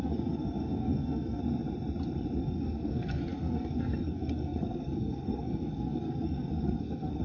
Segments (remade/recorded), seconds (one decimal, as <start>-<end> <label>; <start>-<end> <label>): 0.0-1.4 remade; 1.4-2.4 recorded; 2.4-7.2 remade